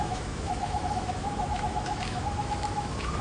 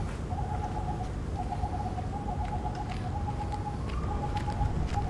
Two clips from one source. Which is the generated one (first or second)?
first